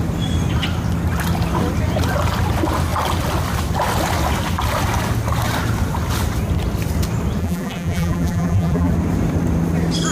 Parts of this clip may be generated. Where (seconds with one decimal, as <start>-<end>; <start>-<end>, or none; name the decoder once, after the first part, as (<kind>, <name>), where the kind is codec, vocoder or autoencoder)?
7.4-8.9 (vocoder, BigVGAN v2)